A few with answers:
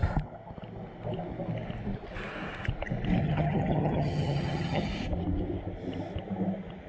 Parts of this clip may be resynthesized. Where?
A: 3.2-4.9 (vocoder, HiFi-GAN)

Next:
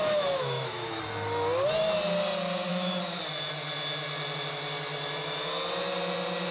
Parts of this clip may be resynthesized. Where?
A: 0.0-1.0 (autoencoder, DAC-VAE); 2.7-3.2

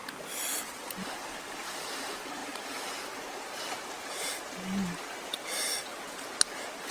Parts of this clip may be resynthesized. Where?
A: 0.0-0.7 (vocoder, BigVGAN v2); 2.4-5.9

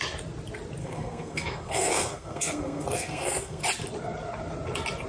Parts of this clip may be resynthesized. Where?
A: 0.8-3.6 (codec, SNAC)

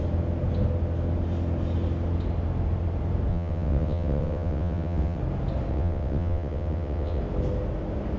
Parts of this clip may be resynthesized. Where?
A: 3.3-5.2 (vocoder, WaveNeXt); 5.7-7.2

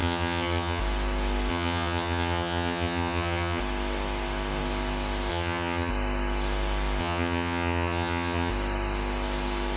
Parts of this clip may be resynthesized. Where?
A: 0.0-0.8 (vocoder, HiFi-GAN); 1.5-3.6; 5.3-5.9; 7.0-8.5

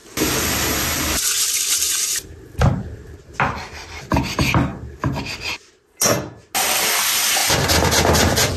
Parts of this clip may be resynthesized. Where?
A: none